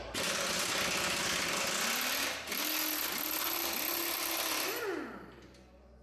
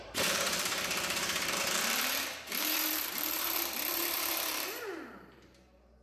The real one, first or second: first